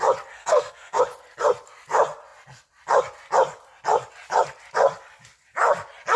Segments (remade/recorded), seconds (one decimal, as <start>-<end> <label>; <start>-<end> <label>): 0.0-0.4 recorded; 0.4-1.0 remade; 1.0-6.2 recorded